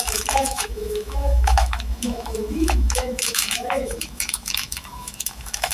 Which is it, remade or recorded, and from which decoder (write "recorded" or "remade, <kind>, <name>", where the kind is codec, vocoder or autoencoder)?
remade, autoencoder, DAC-VAE